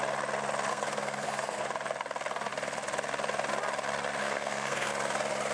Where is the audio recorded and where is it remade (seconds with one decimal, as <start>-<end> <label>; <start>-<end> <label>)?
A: 0.0-0.7 recorded; 0.7-1.6 remade; 1.6-4.2 recorded; 4.2-4.9 remade; 4.9-5.5 recorded